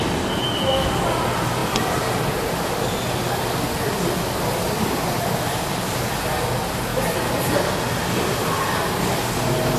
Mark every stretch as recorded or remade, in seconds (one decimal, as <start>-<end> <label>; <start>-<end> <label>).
0.0-9.8 recorded